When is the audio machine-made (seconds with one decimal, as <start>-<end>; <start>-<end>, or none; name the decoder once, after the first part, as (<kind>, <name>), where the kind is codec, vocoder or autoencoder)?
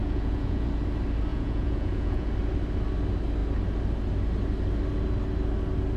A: 0.0-0.7 (vocoder, Vocos); 1.3-2.3